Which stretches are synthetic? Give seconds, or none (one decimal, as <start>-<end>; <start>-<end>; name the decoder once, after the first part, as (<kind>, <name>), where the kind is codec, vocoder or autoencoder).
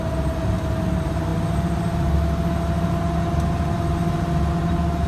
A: none